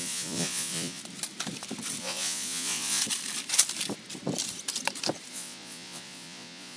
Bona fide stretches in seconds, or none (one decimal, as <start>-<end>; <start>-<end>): 1.0-2.0; 3.0-5.3